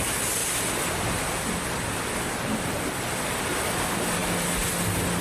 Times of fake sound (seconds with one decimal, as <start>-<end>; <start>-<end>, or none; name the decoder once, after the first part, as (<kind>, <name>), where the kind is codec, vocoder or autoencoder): none